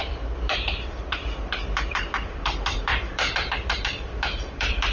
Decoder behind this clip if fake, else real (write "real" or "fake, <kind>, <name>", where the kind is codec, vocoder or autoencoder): fake, vocoder, BigVGAN v2